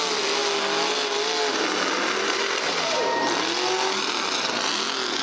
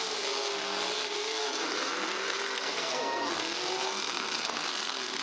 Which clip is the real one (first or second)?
first